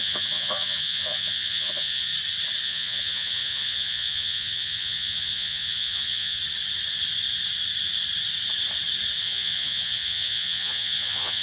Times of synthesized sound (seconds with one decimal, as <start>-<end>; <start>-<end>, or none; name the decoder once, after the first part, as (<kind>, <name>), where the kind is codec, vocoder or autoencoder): 0.0-2.1 (vocoder, Vocos); 2.6-6.4; 9.2-11.4